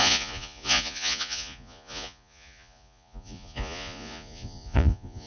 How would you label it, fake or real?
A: fake